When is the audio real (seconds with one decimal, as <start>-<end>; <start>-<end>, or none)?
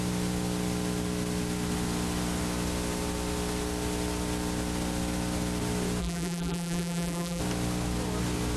0.0-6.0; 7.4-8.6